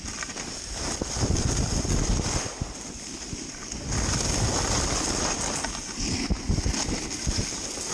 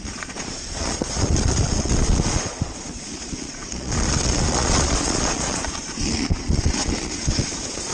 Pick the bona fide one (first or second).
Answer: first